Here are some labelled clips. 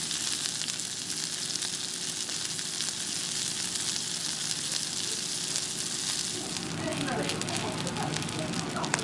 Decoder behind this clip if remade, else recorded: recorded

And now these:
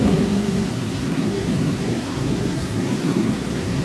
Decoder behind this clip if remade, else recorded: remade, codec, SNAC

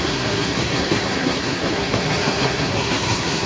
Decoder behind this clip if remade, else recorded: remade, codec, SNAC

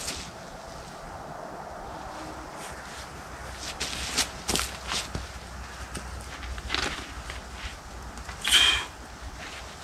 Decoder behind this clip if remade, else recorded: recorded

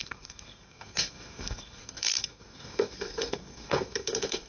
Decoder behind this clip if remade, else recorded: remade, codec, SNAC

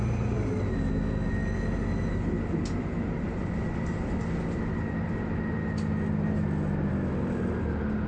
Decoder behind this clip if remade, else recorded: recorded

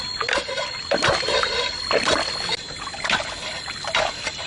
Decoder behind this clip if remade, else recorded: recorded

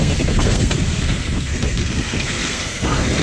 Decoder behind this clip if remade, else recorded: remade, codec, SNAC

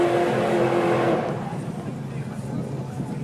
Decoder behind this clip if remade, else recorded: recorded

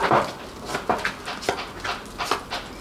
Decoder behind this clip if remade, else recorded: recorded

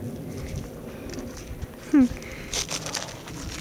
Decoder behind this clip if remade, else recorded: recorded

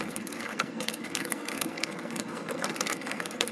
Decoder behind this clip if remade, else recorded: remade, codec, SNAC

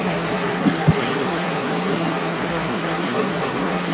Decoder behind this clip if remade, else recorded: remade, codec, SNAC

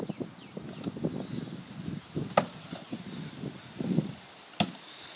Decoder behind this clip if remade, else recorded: recorded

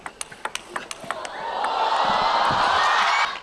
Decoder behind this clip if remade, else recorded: recorded